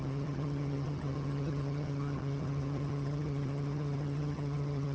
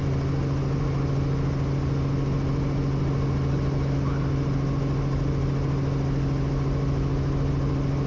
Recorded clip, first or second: second